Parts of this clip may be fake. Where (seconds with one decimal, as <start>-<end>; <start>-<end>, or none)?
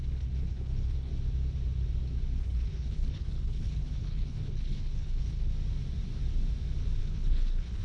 0.0-1.1; 2.4-5.5; 7.0-7.8